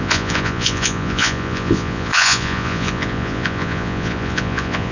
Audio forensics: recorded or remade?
remade